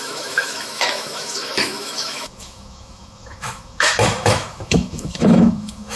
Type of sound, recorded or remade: remade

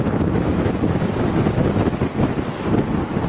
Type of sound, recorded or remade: recorded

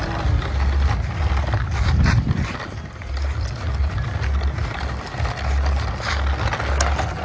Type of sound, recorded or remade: recorded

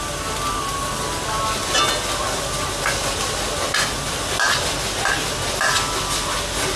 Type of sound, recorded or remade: recorded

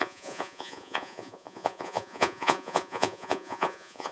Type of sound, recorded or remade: remade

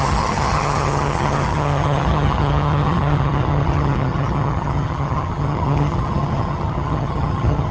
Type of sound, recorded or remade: remade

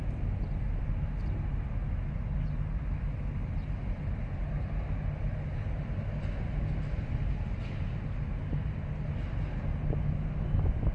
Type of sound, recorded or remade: recorded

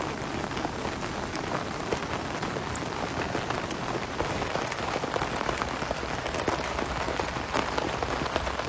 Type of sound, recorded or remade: recorded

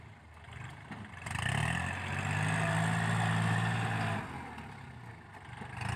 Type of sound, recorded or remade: recorded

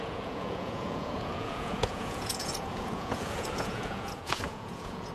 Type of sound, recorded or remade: remade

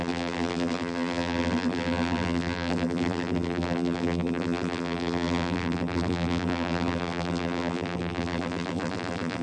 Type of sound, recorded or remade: remade